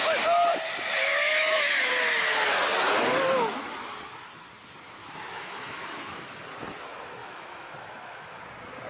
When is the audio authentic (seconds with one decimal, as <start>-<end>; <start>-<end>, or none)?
0.0-1.1; 1.9-5.0; 6.4-7.2; 8.4-8.9